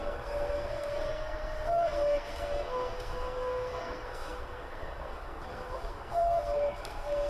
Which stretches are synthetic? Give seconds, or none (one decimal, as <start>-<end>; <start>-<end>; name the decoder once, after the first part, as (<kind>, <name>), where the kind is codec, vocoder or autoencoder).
0.0-7.3 (codec, SNAC)